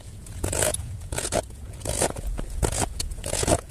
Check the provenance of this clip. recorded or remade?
remade